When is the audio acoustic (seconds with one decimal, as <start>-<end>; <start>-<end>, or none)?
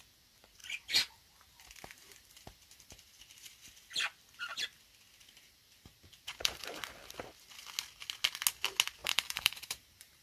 0.0-0.6; 3.2-5.2; 6.8-9.0